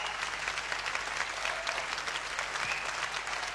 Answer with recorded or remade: recorded